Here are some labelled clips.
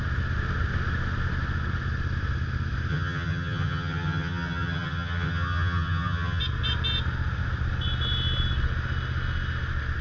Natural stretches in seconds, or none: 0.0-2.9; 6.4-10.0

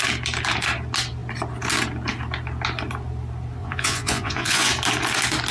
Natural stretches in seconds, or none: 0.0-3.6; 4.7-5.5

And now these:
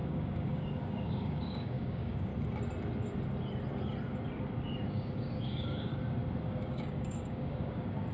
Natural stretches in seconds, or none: 2.3-4.9; 5.9-6.4

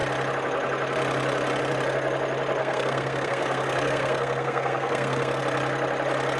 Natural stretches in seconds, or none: 0.0-2.6; 5.4-6.4